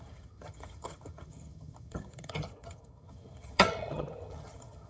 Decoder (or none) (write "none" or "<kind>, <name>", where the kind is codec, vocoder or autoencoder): vocoder, HiFi-GAN